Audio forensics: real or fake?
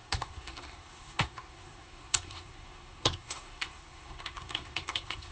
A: fake